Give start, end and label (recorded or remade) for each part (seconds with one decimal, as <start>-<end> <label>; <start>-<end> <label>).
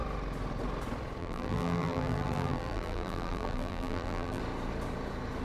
0.0-1.2 recorded; 1.2-4.4 remade; 4.4-5.4 recorded